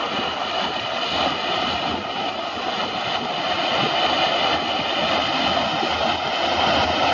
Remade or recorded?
recorded